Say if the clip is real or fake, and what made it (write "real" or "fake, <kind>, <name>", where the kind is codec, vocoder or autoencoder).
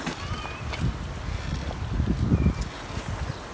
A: real